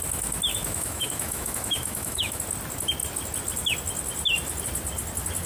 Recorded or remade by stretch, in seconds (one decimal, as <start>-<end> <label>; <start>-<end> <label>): 0.0-0.5 recorded; 0.5-2.4 remade; 2.4-5.5 recorded